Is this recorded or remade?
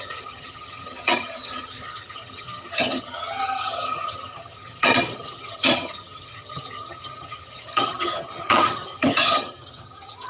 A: remade